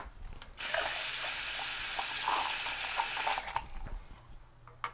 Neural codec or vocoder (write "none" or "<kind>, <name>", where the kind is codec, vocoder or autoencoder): none